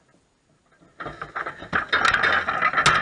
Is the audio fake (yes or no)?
no